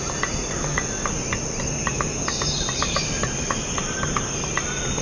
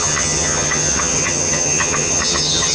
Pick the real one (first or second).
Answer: first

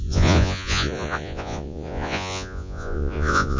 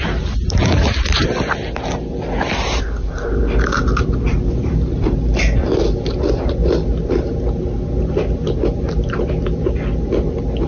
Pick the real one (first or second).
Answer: second